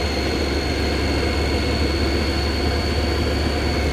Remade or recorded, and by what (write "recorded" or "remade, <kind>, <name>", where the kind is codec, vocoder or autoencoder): recorded